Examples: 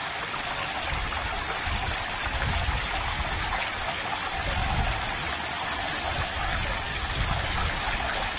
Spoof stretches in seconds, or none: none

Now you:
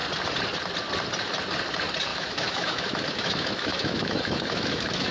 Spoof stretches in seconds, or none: 2.1-5.1

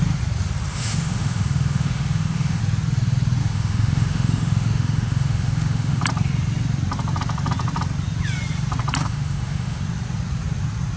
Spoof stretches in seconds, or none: 0.7-2.6; 3.4-6.0; 9.0-9.8

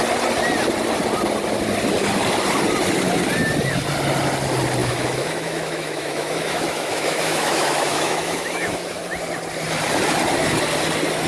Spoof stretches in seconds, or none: 4.8-9.0

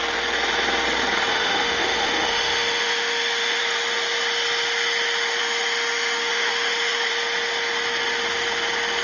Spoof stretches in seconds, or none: 1.3-3.6; 5.4-7.1

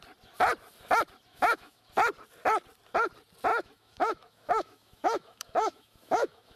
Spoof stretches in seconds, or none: 1.3-1.9; 3.5-6.6

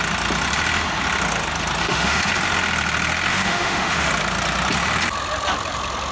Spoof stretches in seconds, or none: 1.8-2.3; 3.3-4.1